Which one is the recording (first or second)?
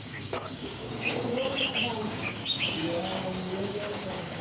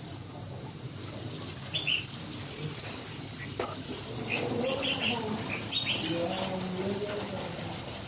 second